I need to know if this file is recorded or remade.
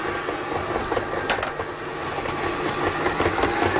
recorded